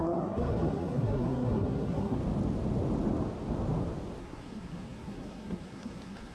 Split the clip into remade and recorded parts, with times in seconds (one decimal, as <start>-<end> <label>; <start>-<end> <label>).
0.0-2.2 remade; 2.2-4.2 recorded; 4.2-6.3 remade